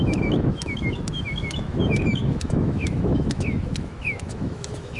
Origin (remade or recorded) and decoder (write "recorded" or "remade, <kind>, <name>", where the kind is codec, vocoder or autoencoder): remade, autoencoder, DAC-VAE